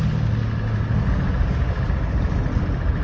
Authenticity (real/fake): real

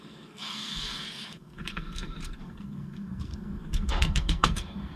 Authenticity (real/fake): fake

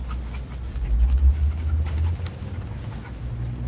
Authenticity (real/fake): real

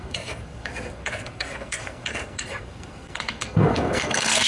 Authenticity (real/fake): fake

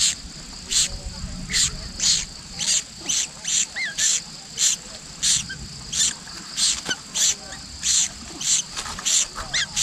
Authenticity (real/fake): real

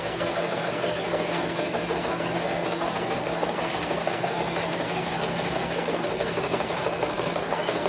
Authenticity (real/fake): fake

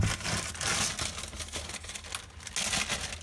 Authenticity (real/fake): real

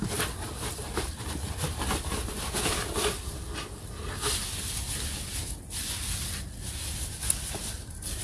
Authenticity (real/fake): real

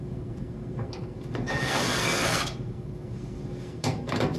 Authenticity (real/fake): fake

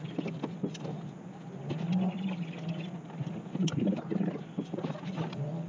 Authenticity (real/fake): real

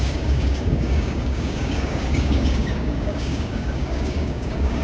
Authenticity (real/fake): fake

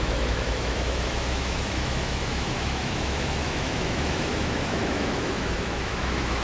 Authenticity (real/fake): fake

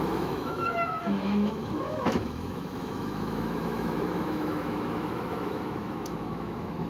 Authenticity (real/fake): fake